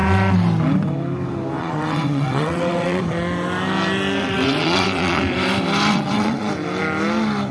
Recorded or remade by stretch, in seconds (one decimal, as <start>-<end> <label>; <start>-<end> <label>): 0.0-1.6 recorded; 1.6-3.0 remade; 3.0-4.2 recorded; 4.2-5.2 remade; 5.2-5.9 recorded; 5.9-6.5 remade; 6.5-7.5 recorded